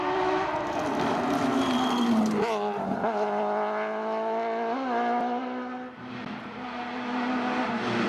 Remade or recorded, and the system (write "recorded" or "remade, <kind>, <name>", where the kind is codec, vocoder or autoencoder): recorded